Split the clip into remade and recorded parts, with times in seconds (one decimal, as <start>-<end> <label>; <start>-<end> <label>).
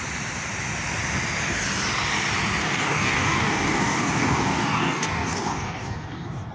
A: 0.0-2.6 recorded; 2.6-6.5 remade